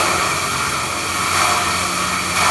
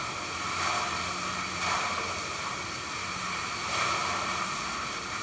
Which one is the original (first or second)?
first